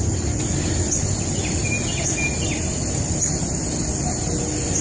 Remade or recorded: recorded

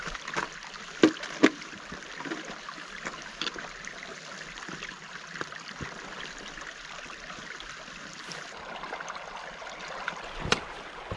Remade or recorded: recorded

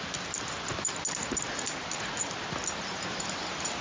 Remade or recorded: recorded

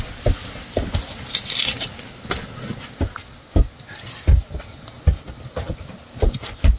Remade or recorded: recorded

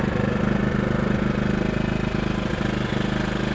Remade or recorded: recorded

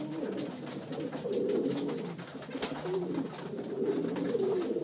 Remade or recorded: recorded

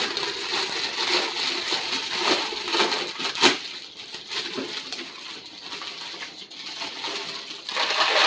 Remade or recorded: recorded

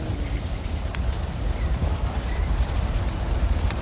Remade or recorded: remade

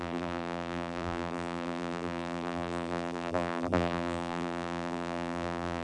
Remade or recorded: remade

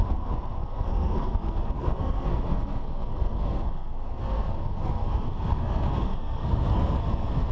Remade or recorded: remade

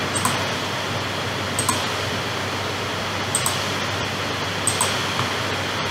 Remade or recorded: recorded